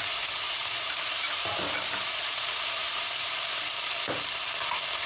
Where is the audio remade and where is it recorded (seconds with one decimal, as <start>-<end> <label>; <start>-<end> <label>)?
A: 0.0-0.6 recorded; 0.6-3.7 remade; 3.7-5.1 recorded